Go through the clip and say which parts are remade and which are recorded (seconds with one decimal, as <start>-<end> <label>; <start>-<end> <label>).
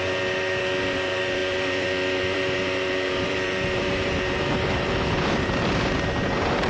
0.0-6.7 remade